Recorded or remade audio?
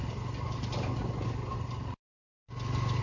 recorded